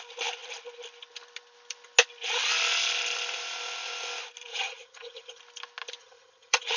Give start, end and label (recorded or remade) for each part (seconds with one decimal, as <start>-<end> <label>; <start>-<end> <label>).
0.0-4.5 recorded; 4.5-5.4 remade; 5.4-6.0 recorded; 6.0-6.8 remade